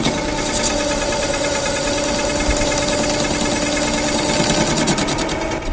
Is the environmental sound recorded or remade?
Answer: recorded